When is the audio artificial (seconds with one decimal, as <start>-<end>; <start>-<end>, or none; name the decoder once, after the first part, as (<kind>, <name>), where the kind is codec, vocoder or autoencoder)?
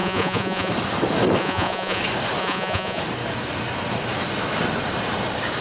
0.0-0.7 (vocoder, Vocos); 1.4-2.0; 2.4-3.0